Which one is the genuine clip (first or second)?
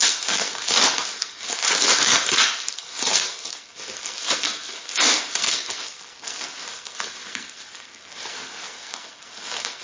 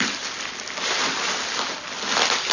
second